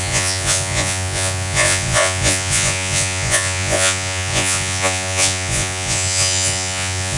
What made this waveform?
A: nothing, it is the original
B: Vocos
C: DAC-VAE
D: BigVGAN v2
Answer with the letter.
B